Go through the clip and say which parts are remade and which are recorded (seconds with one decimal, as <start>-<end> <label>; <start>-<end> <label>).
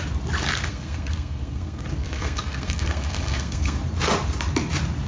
0.0-0.7 recorded; 0.7-3.8 remade; 3.8-5.1 recorded